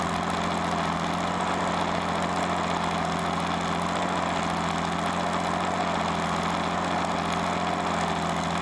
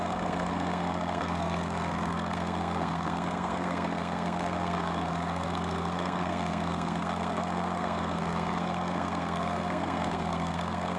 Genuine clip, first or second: first